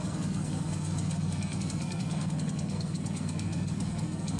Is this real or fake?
fake